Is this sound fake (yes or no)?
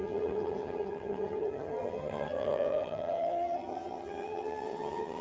yes